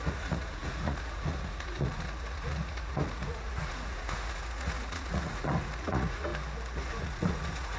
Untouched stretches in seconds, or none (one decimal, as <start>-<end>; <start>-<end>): 6.3-6.9

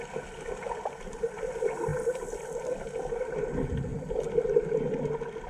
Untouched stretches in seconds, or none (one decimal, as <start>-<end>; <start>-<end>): 0.0-5.5

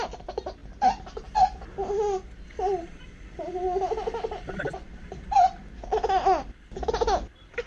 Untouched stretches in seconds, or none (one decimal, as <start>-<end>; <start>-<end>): 0.0-7.7

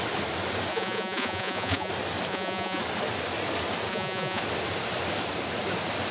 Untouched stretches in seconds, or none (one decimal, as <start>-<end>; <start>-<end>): 0.0-0.7; 1.9-2.3; 2.8-3.9; 4.4-6.1

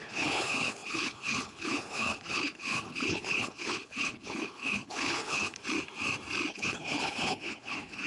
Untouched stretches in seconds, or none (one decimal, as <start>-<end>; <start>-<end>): 5.6-6.5

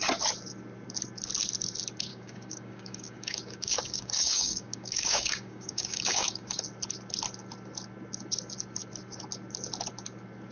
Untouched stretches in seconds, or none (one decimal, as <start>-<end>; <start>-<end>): 0.0-2.1; 6.6-10.5

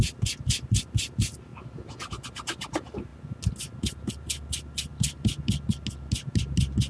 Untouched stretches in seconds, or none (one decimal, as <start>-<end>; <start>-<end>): 0.0-6.9

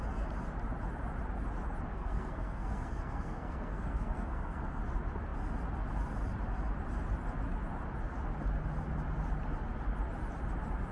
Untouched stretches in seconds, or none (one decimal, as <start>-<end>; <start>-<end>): 0.0-1.9; 4.8-10.9